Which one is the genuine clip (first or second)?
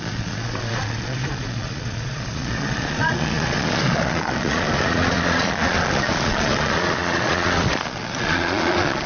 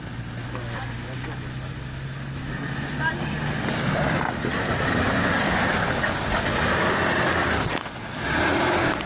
second